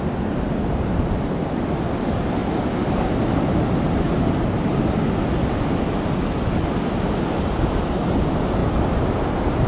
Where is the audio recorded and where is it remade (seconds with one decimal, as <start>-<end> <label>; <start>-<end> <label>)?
0.0-9.7 recorded